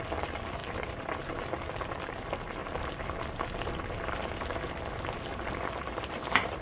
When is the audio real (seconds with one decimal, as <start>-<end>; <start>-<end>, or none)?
0.0-0.6; 1.8-2.6